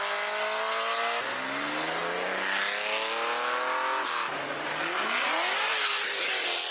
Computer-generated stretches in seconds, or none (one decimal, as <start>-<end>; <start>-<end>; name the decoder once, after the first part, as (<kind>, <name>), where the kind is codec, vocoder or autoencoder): none